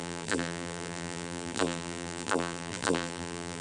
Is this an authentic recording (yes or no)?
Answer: no